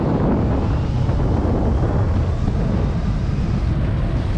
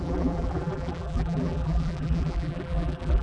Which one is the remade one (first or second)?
second